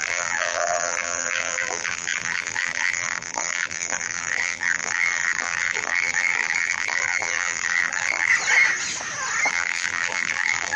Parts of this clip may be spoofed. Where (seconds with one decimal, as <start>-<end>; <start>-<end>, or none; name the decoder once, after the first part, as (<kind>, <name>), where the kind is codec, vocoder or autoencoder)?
0.0-8.3 (vocoder, BigVGAN v2); 9.5-10.8